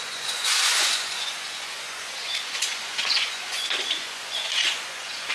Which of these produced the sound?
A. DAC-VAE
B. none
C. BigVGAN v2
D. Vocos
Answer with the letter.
D